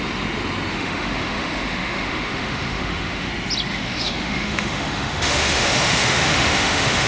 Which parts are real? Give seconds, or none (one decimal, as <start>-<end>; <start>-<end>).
0.0-0.7; 3.3-3.7